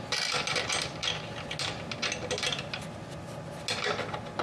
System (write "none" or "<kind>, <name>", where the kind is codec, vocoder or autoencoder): none